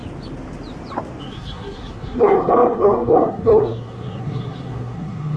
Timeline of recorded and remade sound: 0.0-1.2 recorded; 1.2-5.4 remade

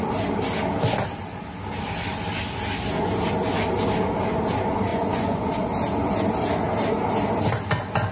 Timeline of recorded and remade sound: 0.0-4.9 recorded; 4.9-5.5 remade; 5.5-8.1 recorded

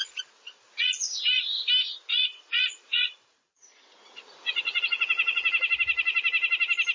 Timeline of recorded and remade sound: 0.0-1.7 remade; 1.7-2.1 recorded; 2.1-4.8 remade; 4.8-6.9 recorded

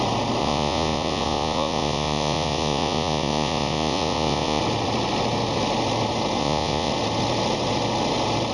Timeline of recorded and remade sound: 0.0-0.4 recorded; 0.4-4.6 remade; 4.6-6.4 recorded; 6.4-6.9 remade; 6.9-8.5 recorded

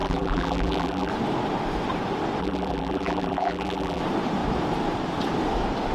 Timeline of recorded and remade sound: 0.0-1.1 remade; 1.1-2.4 recorded; 2.4-4.0 remade; 4.0-5.9 recorded

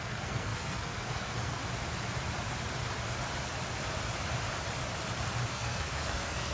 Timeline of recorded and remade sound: 0.0-1.6 remade; 1.6-5.5 recorded; 5.5-6.5 remade

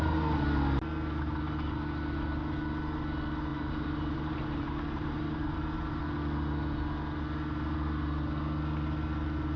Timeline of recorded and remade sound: 0.0-3.5 recorded; 3.5-6.0 remade; 6.0-9.6 recorded